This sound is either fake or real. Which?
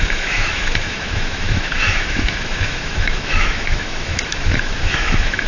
fake